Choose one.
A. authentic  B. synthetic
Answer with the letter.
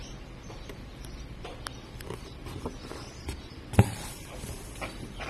A